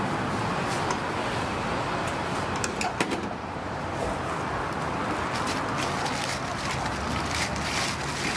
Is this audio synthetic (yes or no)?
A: no